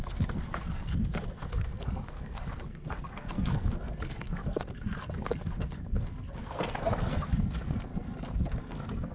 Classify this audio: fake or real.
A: fake